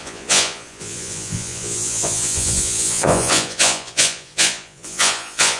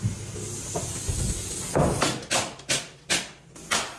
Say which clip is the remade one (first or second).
first